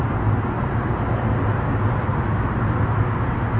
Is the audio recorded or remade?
recorded